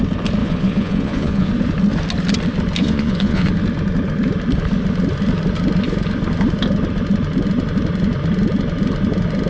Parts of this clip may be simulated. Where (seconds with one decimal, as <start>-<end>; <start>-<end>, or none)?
0.4-1.5; 2.8-3.5